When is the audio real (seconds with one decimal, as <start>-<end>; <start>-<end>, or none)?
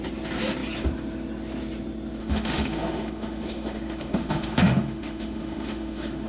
0.0-2.2